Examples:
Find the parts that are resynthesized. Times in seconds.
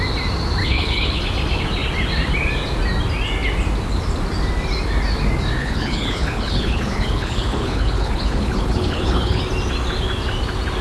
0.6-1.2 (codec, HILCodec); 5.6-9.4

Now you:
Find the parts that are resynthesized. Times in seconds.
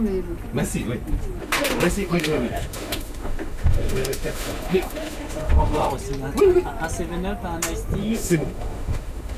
1.4-5.9 (autoencoder, DAC-VAE); 8.0-9.4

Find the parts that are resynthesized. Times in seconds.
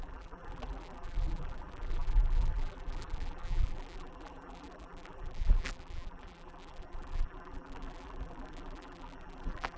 0.0-9.8 (vocoder, BigVGAN v2)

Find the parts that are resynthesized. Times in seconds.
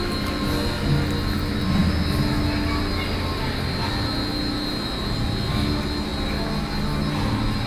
none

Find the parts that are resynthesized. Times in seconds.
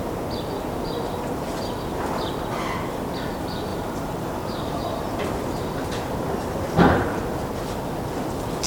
3.7-7.5 (vocoder, BigVGAN v2)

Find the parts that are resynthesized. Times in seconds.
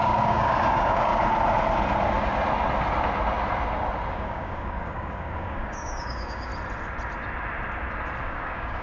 0.0-1.1 (codec, DAC); 4.1-6.5; 8.2-8.8